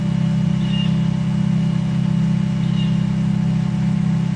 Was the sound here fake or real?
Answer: real